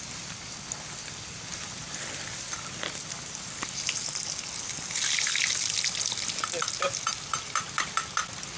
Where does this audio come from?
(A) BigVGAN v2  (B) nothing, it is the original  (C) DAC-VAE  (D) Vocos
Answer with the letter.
B